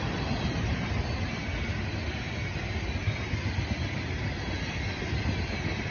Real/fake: real